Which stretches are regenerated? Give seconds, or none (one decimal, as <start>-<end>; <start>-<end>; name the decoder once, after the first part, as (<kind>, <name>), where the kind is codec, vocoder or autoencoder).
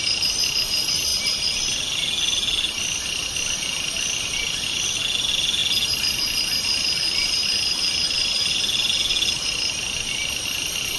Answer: none